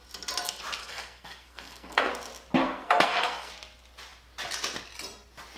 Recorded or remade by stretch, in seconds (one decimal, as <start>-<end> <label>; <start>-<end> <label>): 0.0-0.8 recorded; 0.8-2.1 remade; 2.1-2.6 recorded; 2.6-3.5 remade; 3.5-5.6 recorded